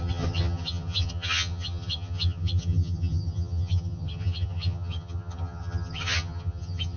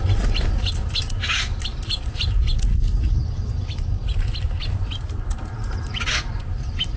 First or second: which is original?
second